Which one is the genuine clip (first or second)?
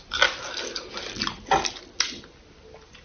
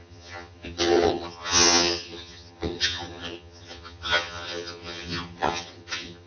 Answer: first